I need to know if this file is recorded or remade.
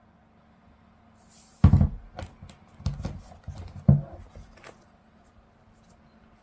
recorded